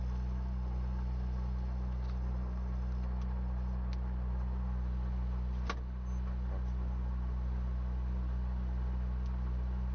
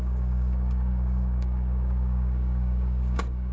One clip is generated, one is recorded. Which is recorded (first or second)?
first